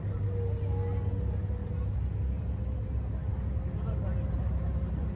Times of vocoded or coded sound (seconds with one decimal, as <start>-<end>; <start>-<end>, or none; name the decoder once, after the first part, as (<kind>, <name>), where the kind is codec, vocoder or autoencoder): none